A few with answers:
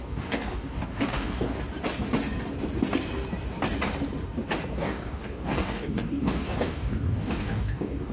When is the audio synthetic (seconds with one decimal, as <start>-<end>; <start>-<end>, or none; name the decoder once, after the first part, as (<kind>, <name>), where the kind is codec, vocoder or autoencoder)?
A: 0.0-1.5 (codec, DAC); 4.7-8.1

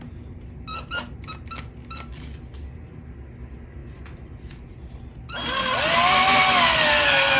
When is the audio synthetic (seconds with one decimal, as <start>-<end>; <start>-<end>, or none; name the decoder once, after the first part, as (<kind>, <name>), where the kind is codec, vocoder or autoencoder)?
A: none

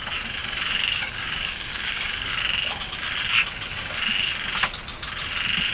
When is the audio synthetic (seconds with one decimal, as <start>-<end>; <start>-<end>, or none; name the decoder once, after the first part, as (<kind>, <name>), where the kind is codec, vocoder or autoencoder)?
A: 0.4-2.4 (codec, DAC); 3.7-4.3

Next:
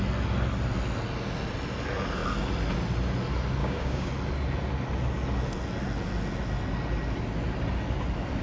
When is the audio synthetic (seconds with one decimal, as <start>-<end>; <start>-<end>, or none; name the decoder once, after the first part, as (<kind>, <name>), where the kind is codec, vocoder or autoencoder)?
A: 3.6-4.1 (codec, DAC)

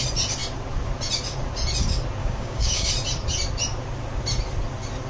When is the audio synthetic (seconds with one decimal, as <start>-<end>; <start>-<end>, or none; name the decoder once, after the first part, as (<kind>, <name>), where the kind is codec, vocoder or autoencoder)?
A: 2.2-2.9 (codec, DAC)

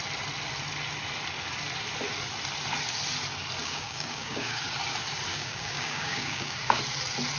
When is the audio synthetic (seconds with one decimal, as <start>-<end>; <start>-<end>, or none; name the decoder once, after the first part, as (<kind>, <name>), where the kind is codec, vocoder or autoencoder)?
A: 3.6-4.6 (codec, DAC); 5.3-6.8

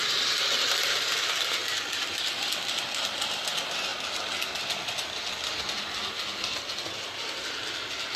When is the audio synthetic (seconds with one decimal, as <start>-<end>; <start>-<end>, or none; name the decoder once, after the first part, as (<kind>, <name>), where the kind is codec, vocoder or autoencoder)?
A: none